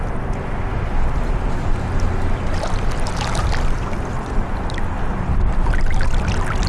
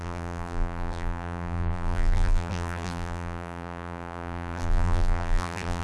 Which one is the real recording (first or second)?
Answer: first